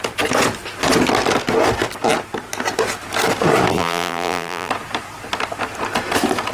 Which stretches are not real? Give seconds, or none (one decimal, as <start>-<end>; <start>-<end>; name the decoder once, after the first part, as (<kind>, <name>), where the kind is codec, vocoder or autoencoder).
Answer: 3.7-4.7 (vocoder, BigVGAN v2)